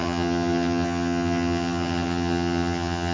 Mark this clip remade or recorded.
remade